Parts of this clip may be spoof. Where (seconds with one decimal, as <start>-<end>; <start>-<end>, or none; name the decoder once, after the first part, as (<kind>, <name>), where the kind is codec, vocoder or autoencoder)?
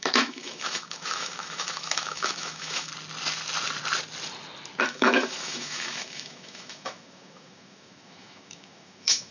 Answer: 0.0-2.9 (autoencoder, DAC-VAE); 4.8-9.3